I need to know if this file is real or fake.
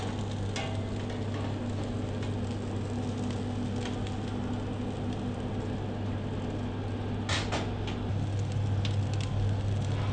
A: real